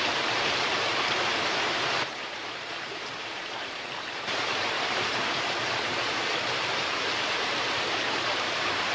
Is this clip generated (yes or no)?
yes